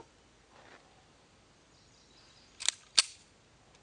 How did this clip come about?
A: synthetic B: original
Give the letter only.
B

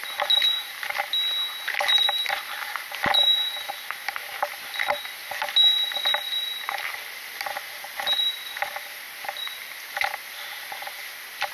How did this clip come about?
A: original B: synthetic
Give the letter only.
A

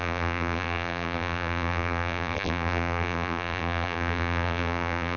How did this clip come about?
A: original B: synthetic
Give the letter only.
B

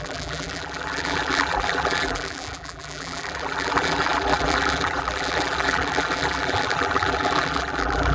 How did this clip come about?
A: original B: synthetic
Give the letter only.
B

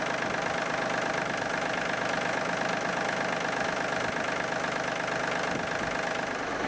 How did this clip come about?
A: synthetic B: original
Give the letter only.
B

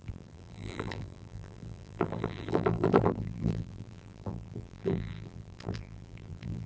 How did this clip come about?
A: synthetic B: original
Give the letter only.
A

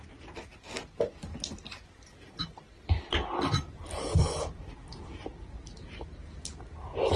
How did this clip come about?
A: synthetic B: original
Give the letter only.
B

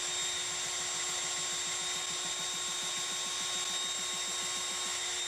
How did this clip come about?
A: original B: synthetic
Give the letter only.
A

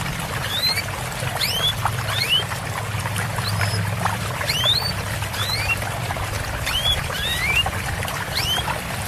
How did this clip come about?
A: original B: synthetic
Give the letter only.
B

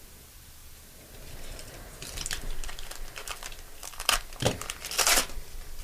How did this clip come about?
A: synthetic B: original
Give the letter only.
A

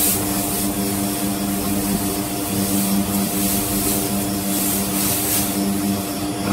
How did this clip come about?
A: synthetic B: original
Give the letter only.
B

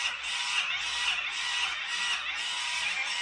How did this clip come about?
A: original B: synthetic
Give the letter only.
A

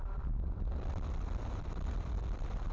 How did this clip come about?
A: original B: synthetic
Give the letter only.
B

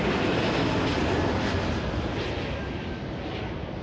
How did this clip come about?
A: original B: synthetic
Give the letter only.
A